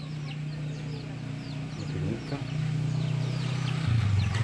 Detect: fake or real fake